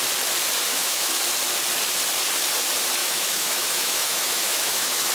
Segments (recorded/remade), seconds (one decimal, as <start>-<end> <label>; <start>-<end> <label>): 0.0-0.7 recorded; 0.7-1.2 remade; 1.2-3.0 recorded; 3.0-5.1 remade